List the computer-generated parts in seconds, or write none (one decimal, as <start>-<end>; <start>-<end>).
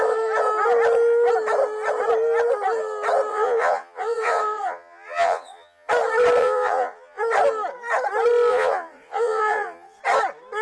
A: 3.3-5.9; 6.4-7.2; 8.5-10.0